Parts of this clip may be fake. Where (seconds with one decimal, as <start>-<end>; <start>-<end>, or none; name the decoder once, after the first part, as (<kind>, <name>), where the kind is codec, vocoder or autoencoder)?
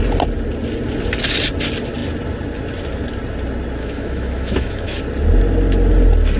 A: 3.8-5.0 (autoencoder, DAC-VAE)